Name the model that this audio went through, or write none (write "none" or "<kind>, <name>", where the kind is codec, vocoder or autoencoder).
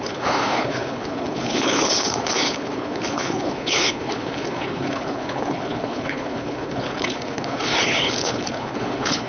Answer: codec, HILCodec